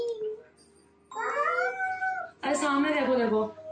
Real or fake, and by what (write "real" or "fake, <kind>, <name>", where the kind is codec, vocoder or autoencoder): real